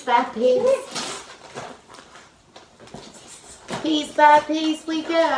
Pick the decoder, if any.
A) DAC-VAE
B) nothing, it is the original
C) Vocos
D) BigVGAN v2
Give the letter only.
B